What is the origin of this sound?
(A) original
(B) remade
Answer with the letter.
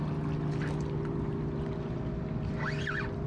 A